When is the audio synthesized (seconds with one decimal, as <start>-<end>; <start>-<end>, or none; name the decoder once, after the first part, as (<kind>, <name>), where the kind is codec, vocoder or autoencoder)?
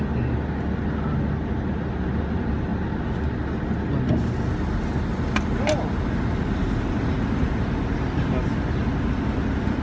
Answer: none